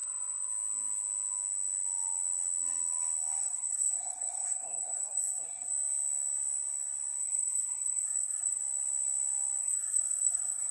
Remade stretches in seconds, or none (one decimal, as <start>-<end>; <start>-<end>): 3.4-5.7; 7.2-8.6; 9.6-10.7